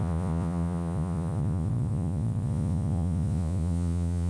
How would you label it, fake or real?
fake